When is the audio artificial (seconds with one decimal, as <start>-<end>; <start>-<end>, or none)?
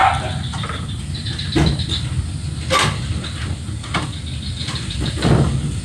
0.0-1.7; 4.6-5.8